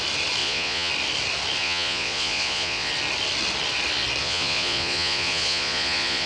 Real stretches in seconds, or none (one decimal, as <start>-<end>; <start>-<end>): 0.0-0.4; 0.9-1.6; 2.9-4.2